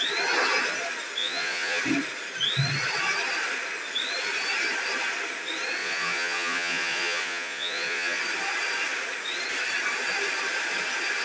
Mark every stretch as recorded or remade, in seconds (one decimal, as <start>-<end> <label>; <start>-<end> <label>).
0.0-1.2 recorded; 1.2-1.8 remade; 1.8-5.8 recorded; 5.8-8.2 remade; 8.2-11.2 recorded

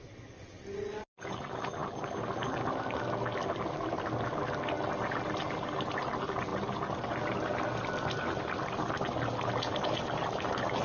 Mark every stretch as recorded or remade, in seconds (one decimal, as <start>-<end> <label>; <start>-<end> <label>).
0.0-10.8 recorded

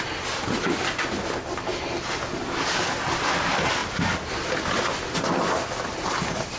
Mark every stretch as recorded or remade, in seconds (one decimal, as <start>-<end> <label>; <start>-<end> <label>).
0.0-6.6 recorded

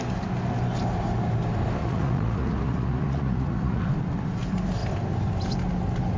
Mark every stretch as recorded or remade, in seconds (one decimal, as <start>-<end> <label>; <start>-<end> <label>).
0.0-1.8 recorded; 1.8-3.9 remade; 3.9-6.2 recorded

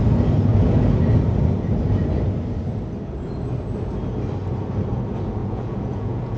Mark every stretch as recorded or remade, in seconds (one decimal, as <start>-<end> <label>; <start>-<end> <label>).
0.0-5.4 recorded; 5.4-6.4 remade

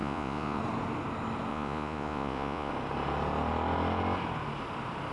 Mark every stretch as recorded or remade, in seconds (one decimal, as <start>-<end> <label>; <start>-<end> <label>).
0.0-0.6 remade; 0.6-1.5 recorded; 1.5-2.7 remade; 2.7-5.1 recorded